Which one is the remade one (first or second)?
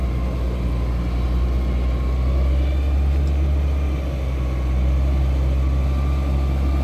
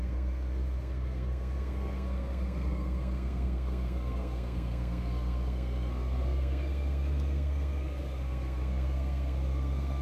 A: second